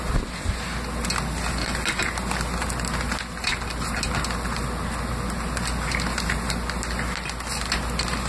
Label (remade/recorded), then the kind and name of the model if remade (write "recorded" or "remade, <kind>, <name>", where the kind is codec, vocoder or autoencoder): recorded